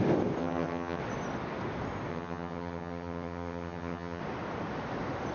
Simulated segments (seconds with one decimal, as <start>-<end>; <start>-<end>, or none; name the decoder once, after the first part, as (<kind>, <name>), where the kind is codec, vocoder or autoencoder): 0.4-1.0 (vocoder, HiFi-GAN); 2.1-4.2